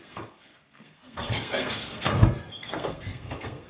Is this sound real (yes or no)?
no